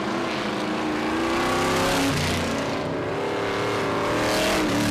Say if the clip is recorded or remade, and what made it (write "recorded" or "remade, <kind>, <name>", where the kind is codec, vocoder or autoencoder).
recorded